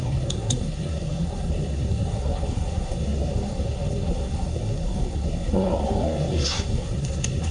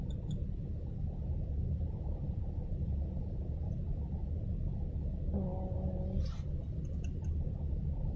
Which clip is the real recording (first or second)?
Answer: second